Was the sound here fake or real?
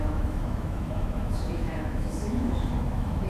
fake